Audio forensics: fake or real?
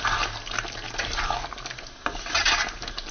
real